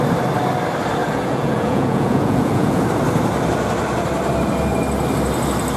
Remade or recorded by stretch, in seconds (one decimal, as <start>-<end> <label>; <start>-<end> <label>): 0.0-1.0 recorded; 1.0-2.8 remade; 2.8-5.8 recorded